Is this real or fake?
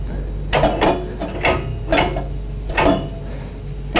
real